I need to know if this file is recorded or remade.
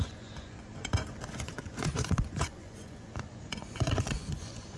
remade